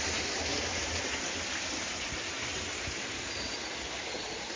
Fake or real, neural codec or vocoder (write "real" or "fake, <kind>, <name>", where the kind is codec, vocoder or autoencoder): fake, vocoder, BigVGAN v2